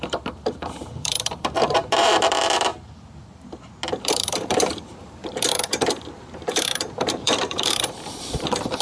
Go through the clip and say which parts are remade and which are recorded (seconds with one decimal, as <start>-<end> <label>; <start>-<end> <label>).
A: 0.0-2.7 remade; 2.7-3.9 recorded; 3.9-8.8 remade